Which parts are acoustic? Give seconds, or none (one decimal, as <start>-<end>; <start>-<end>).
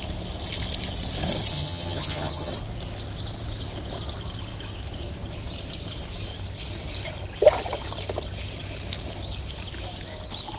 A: 0.0-1.5; 2.5-10.6